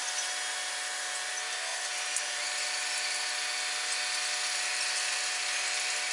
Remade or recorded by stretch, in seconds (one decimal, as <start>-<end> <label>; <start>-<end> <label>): 0.0-6.1 recorded